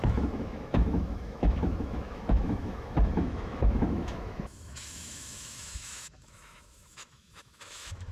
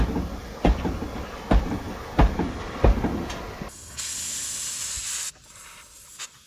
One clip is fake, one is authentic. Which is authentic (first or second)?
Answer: second